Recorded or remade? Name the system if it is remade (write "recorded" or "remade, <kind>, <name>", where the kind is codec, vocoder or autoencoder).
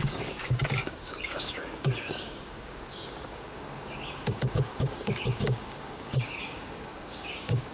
remade, codec, DAC